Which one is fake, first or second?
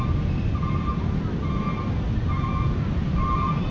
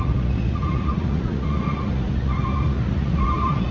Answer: second